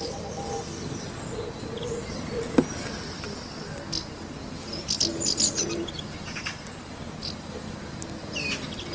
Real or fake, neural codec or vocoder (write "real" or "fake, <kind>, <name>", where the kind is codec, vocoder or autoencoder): real